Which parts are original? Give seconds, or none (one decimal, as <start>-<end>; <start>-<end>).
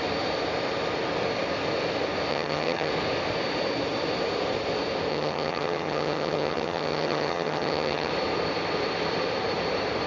0.0-2.3; 2.9-5.1; 8.1-10.1